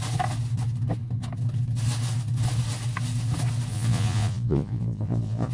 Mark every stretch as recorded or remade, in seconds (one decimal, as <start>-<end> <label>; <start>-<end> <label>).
0.0-3.7 recorded; 3.7-5.5 remade